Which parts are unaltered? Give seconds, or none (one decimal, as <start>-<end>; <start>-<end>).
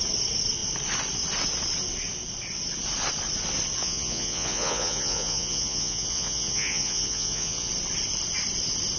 0.0-3.8; 7.7-9.0